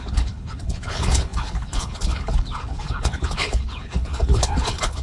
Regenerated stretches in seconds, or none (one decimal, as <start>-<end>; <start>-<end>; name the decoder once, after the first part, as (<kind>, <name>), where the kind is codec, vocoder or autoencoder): 0.0-5.0 (codec, HILCodec)